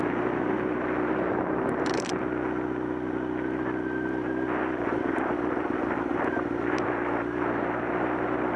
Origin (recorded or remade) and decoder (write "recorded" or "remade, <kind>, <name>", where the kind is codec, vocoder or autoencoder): recorded